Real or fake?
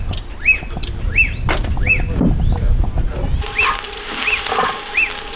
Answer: real